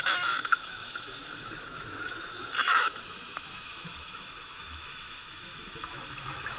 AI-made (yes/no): yes